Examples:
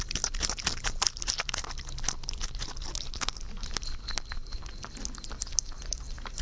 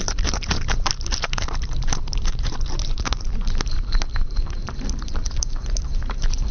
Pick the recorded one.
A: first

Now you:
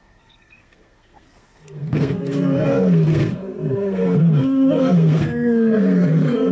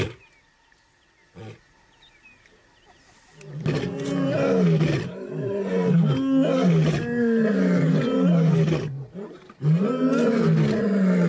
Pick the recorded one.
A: second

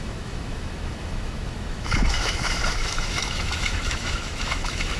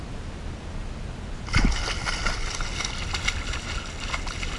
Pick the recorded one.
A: second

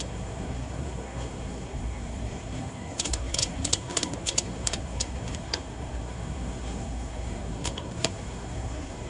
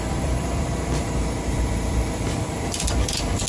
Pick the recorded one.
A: second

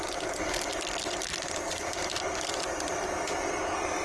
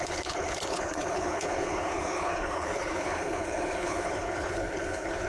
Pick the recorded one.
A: first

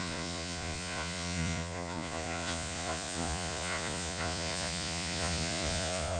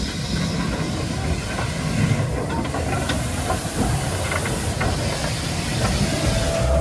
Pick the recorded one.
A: second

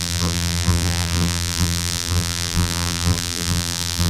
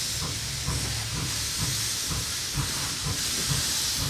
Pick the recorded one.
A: second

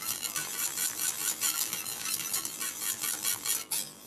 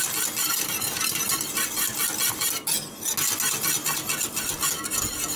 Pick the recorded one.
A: second